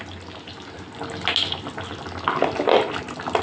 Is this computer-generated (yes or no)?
no